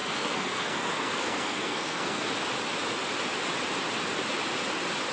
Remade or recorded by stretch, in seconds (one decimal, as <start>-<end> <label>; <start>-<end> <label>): 0.0-2.3 remade; 2.3-5.1 recorded